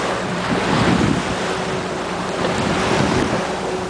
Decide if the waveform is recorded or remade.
recorded